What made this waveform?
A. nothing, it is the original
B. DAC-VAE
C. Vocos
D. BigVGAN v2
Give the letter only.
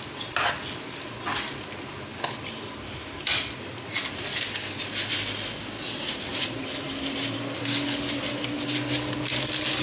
A